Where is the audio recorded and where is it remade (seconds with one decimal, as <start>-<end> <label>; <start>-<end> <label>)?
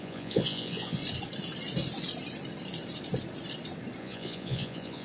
0.0-1.0 remade; 1.0-4.0 recorded; 4.0-5.0 remade